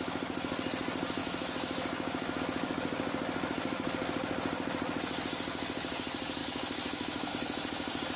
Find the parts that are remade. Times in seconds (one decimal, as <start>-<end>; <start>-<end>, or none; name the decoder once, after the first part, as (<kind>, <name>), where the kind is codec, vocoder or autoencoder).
1.2-2.4 (autoencoder, DAC-VAE); 6.4-7.3